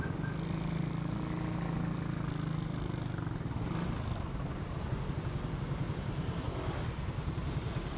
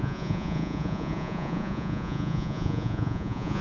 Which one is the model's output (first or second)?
second